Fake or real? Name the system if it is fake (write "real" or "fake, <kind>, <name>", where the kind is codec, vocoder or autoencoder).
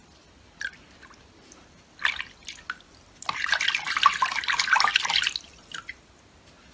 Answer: real